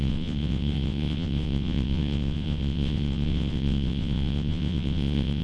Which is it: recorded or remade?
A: remade